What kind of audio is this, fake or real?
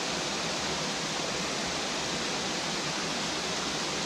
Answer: real